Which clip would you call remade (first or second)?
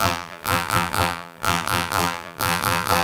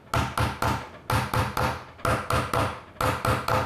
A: first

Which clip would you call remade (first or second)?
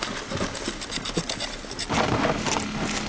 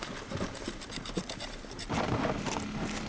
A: second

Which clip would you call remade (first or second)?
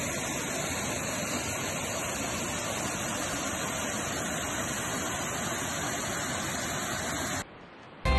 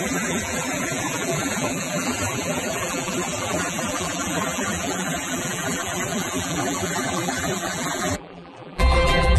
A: second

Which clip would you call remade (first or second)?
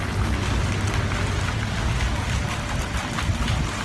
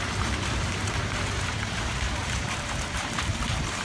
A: second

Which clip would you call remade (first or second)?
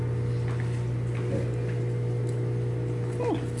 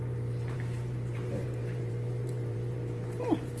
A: second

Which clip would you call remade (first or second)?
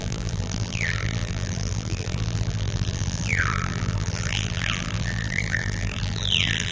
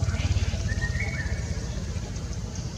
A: first